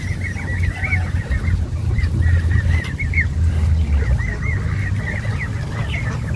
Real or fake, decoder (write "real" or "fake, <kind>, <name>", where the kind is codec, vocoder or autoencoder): real